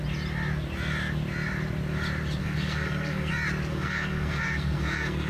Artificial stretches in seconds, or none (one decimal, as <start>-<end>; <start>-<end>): 2.4-3.3; 3.7-5.3